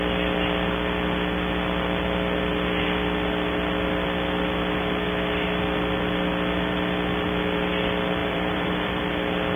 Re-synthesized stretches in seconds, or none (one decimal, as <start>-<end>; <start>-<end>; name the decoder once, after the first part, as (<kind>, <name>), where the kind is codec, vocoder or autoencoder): 8.2-9.0 (vocoder, BigVGAN v2)